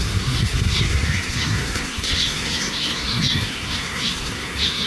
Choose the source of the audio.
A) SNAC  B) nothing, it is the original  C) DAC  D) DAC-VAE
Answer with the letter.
A